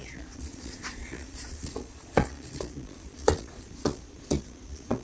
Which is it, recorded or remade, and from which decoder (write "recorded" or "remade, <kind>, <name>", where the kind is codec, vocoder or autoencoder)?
remade, vocoder, Vocos